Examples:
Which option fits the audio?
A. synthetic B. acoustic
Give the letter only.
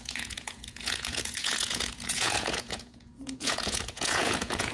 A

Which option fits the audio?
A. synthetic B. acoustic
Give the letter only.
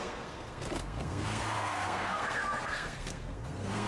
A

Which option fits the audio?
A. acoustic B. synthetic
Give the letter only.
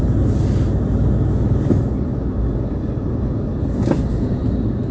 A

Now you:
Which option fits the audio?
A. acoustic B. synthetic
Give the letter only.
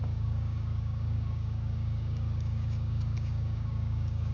B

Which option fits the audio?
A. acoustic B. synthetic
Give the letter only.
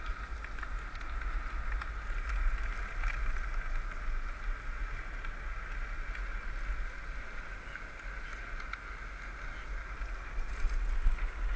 A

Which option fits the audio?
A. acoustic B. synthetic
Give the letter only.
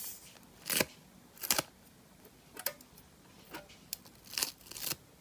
A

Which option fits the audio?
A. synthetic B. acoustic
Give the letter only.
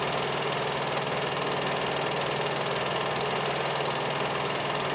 B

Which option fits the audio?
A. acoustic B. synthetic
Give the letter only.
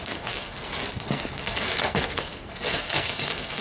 B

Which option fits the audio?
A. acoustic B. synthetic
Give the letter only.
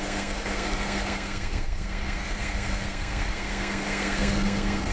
B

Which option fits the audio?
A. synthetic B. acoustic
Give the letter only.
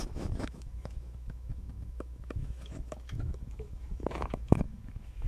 A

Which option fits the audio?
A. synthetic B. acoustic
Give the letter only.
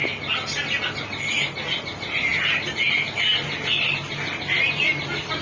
B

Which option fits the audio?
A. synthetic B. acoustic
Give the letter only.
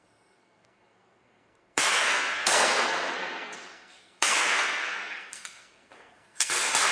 A